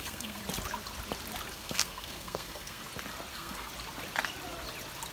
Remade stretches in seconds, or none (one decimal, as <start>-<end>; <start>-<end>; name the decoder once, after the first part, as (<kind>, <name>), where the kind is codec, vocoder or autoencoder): 0.0-0.4 (codec, SNAC); 1.5-2.8; 3.3-3.7